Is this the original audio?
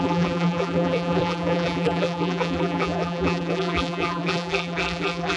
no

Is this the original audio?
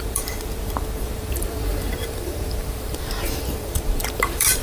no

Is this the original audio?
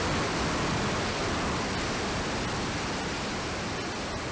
yes